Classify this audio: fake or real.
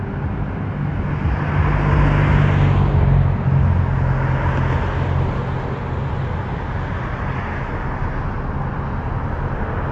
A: real